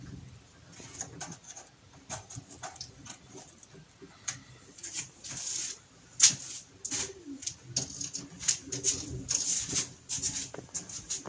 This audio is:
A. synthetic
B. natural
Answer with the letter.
B